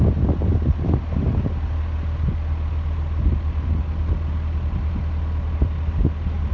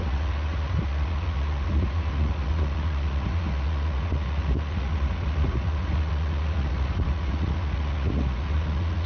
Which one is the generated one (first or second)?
second